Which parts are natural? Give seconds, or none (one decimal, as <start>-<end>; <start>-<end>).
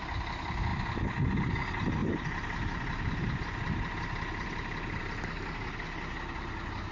0.0-6.9